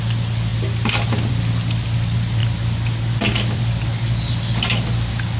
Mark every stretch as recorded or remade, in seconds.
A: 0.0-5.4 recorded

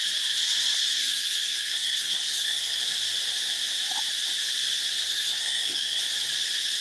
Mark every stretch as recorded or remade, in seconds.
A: 0.0-1.0 recorded; 1.0-2.8 remade; 2.8-5.0 recorded; 5.0-6.0 remade; 6.0-6.8 recorded

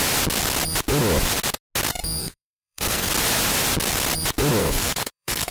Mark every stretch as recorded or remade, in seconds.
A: 0.0-2.2 recorded; 2.2-3.1 remade; 3.1-4.6 recorded; 4.6-5.5 remade

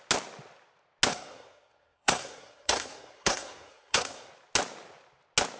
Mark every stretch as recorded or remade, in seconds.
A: 0.0-1.1 recorded; 1.1-4.3 remade; 4.3-5.6 recorded

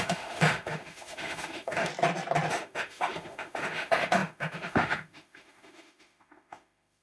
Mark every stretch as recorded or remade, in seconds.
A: 0.0-1.9 remade; 1.9-2.5 recorded; 2.5-7.0 remade

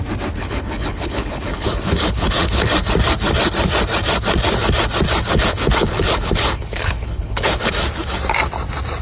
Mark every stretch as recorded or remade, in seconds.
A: 0.0-0.4 recorded; 0.4-2.7 remade; 2.7-5.3 recorded; 5.3-7.7 remade; 7.7-9.0 recorded

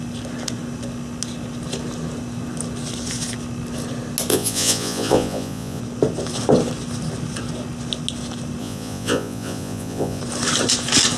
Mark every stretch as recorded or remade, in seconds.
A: 0.0-4.3 recorded; 4.3-5.8 remade; 5.8-8.6 recorded; 8.6-10.2 remade; 10.2-11.2 recorded